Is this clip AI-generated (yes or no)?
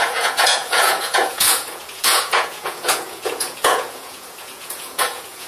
yes